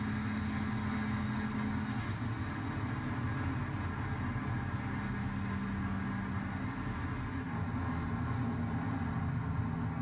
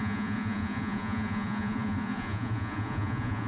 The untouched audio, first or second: first